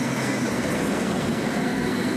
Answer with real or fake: fake